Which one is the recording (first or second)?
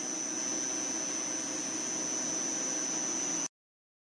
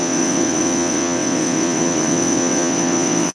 first